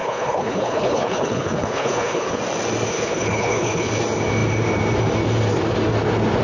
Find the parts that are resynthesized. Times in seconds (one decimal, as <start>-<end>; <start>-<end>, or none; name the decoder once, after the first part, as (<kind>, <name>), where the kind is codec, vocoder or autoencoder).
0.0-2.4 (codec, HILCodec); 2.9-3.9